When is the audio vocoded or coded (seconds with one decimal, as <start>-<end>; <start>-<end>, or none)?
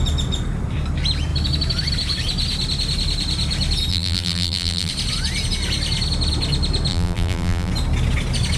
3.9-4.9; 6.9-7.7